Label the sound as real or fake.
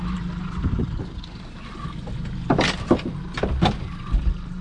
real